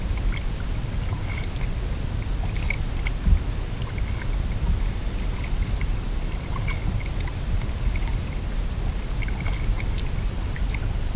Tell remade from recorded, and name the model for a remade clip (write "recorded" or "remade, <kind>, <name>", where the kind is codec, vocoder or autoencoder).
recorded